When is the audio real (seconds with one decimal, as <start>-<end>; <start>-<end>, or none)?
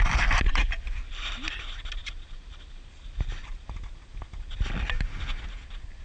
0.0-0.6; 1.5-2.0; 3.9-6.0